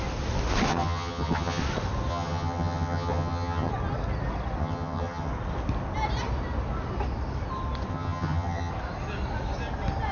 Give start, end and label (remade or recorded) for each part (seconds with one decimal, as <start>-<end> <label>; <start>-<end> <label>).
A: 0.0-0.7 recorded; 0.7-1.6 remade; 1.6-2.1 recorded; 2.1-3.7 remade; 3.7-4.6 recorded; 4.6-5.3 remade; 5.3-7.9 recorded; 7.9-8.7 remade; 8.7-10.1 recorded